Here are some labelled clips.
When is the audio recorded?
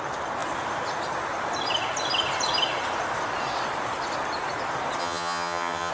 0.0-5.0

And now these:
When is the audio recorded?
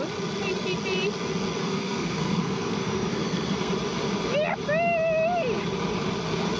0.0-1.6; 3.7-6.6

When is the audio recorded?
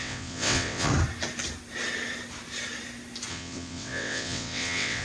0.9-3.3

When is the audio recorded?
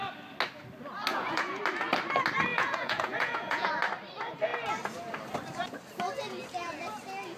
0.0-1.1; 1.6-2.5; 3.7-7.4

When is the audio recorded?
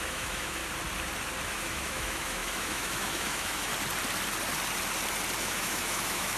0.6-1.5; 3.7-5.4